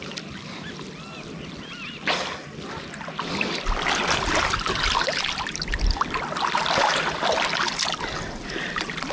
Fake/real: real